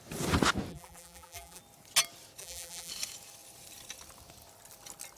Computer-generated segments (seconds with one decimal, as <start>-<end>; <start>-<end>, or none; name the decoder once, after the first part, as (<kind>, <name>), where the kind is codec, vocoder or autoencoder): 0.7-1.6 (vocoder, BigVGAN v2); 2.4-2.9